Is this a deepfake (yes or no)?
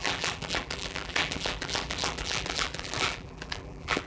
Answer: yes